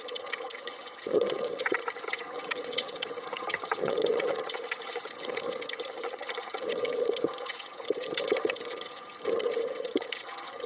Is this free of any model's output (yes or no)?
no